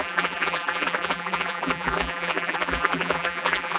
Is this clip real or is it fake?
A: fake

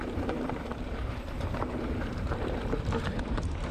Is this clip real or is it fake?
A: fake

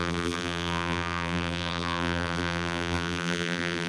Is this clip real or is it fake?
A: fake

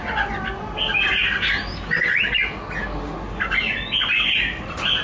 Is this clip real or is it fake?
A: real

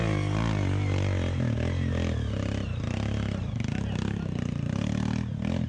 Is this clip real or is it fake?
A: real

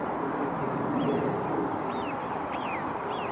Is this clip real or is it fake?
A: real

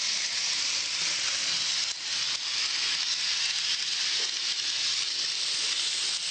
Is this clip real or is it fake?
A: real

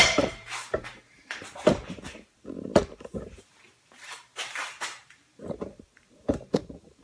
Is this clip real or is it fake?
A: fake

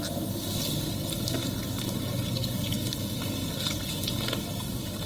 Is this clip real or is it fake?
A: real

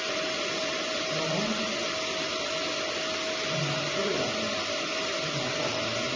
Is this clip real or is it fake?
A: real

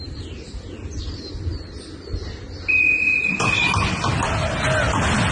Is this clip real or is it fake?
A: real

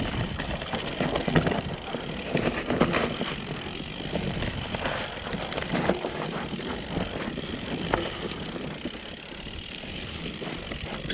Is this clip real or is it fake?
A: real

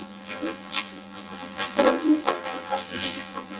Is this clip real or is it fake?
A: fake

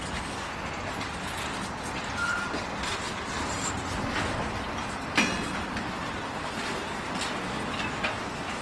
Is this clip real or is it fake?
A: real